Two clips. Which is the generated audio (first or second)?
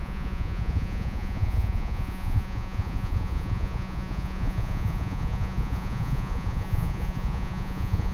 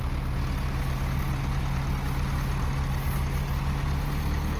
first